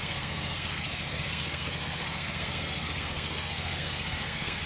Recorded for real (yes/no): no